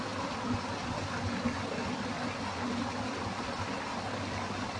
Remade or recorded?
recorded